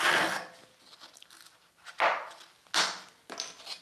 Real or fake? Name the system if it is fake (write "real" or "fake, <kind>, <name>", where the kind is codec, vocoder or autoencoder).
real